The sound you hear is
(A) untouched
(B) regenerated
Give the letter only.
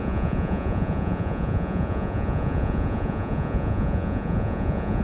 B